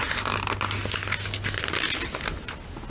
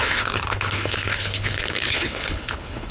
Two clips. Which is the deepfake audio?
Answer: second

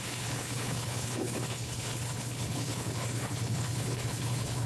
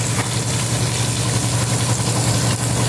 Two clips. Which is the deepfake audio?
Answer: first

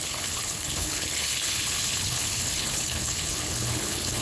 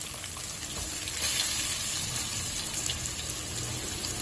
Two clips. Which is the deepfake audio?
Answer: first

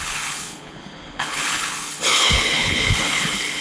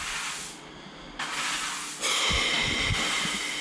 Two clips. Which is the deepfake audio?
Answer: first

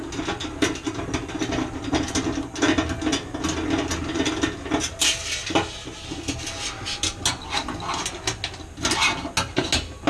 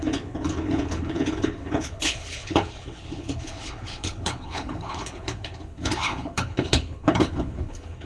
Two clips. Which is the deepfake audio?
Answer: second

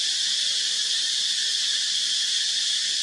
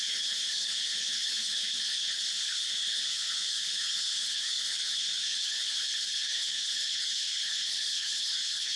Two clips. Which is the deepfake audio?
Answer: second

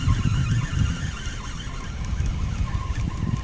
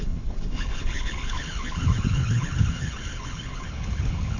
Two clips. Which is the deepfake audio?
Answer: second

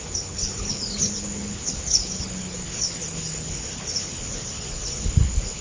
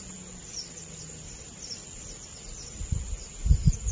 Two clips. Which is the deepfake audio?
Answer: first